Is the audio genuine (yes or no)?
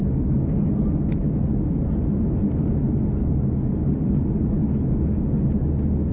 yes